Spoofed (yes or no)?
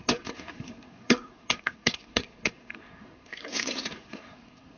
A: yes